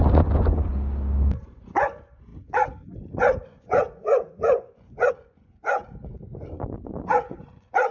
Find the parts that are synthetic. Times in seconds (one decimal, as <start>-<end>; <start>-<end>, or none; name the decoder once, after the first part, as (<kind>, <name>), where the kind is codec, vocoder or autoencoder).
0.0-0.7 (vocoder, Vocos); 1.4-7.9